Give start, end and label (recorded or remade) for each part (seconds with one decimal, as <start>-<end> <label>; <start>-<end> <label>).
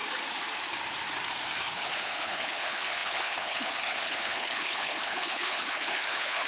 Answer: 0.0-1.6 recorded; 1.6-6.5 remade